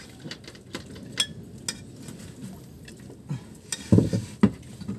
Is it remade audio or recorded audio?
recorded